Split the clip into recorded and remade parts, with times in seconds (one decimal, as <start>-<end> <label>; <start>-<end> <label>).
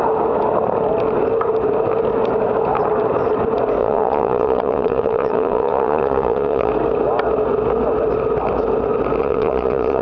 0.0-3.8 recorded; 3.8-6.7 remade; 6.7-9.2 recorded; 9.2-10.0 remade